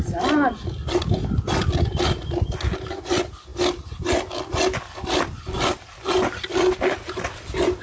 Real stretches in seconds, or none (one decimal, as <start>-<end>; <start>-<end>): 0.0-7.8